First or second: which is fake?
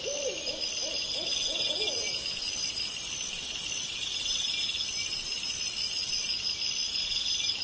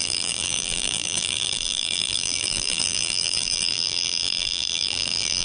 second